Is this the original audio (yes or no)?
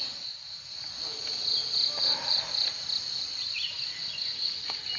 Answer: yes